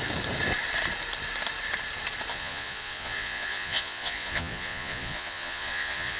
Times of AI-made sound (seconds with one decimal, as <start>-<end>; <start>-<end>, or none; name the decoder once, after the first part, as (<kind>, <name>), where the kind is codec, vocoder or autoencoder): 2.3-6.2 (vocoder, Vocos)